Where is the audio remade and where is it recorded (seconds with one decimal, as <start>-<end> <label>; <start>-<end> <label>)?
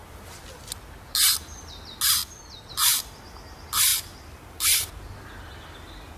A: 0.0-3.9 recorded; 3.9-5.0 remade; 5.0-6.2 recorded